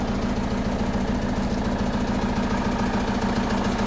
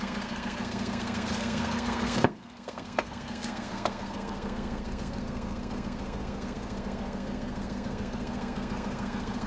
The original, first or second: first